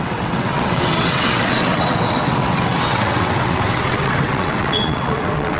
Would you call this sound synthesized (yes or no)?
yes